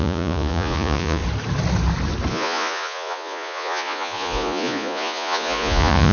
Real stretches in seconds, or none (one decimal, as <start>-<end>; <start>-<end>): 1.2-2.3